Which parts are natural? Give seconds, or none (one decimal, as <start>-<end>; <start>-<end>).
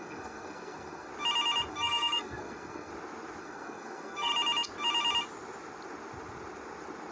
1.1-1.7; 2.9-3.4; 4.3-7.1